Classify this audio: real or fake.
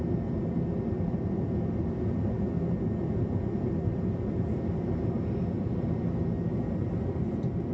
real